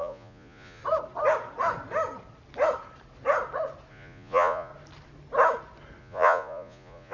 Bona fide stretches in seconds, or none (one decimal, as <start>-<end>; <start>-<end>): 0.8-3.9; 4.7-6.0